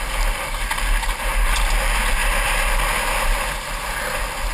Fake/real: real